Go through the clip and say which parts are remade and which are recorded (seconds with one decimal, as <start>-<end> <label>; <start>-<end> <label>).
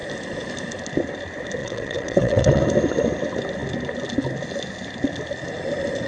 0.0-1.6 recorded; 1.6-2.6 remade; 2.6-6.1 recorded